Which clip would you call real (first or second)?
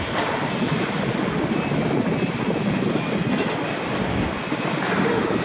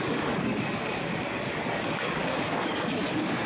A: first